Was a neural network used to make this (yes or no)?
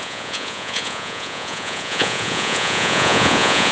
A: yes